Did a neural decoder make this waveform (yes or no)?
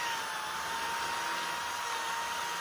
no